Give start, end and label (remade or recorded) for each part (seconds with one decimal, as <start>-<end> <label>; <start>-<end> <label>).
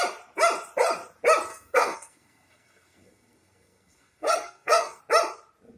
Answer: 0.0-1.5 recorded; 1.5-5.0 remade; 5.0-5.8 recorded